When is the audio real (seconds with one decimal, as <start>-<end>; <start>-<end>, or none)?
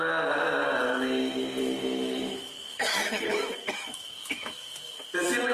0.0-1.6; 4.9-5.5